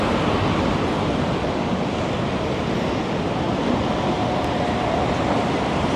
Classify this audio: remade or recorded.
remade